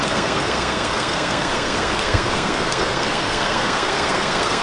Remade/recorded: remade